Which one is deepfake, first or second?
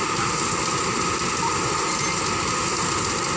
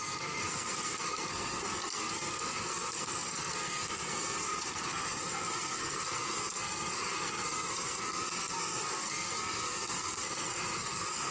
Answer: second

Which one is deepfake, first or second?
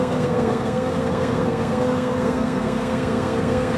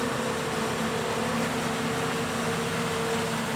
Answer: first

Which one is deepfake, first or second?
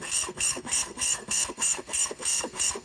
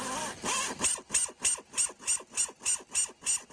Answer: first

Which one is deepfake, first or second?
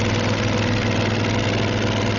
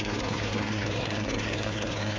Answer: second